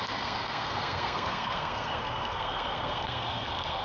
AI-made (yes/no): yes